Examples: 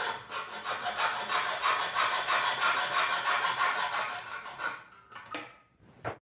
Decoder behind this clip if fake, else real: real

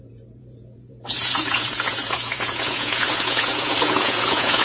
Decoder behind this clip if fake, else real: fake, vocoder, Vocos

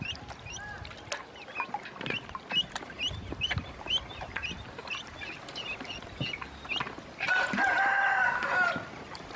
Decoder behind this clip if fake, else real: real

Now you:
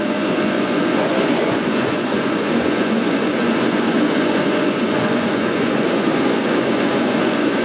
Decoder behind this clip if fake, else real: fake, vocoder, Vocos